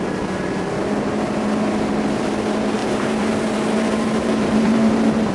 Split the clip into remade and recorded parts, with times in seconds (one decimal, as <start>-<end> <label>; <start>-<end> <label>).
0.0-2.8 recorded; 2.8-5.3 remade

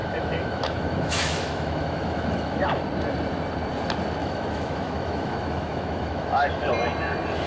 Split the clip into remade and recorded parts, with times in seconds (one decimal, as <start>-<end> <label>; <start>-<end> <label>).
0.0-2.8 remade; 2.8-4.2 recorded; 4.2-6.7 remade; 6.7-7.5 recorded

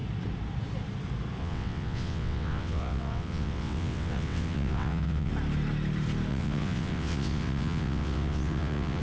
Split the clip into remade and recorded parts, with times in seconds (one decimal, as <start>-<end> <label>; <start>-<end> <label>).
0.0-1.4 recorded; 1.4-5.3 remade; 5.3-6.3 recorded; 6.3-9.0 remade

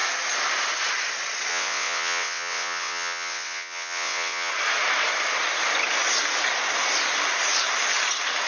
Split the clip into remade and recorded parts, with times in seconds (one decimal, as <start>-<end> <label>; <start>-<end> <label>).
0.0-1.5 recorded; 1.5-4.5 remade; 4.5-8.5 recorded